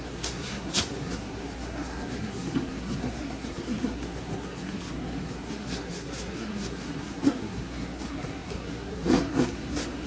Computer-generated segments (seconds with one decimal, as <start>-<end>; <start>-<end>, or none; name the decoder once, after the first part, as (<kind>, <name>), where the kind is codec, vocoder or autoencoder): 0.0-10.1 (codec, SNAC)